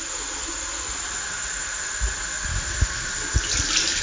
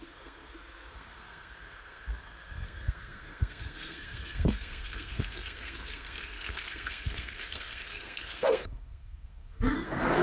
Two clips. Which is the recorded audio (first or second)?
first